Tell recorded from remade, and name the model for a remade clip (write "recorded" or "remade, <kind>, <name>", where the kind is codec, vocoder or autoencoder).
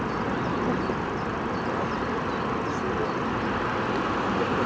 recorded